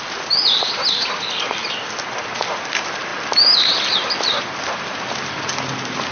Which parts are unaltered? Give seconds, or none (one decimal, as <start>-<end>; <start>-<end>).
0.0-6.1